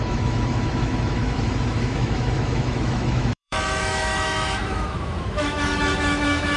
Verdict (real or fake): fake